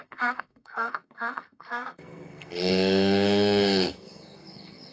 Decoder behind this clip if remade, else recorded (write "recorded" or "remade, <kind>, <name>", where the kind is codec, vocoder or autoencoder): remade, codec, SNAC